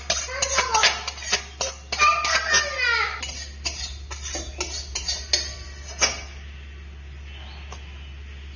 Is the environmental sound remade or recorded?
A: recorded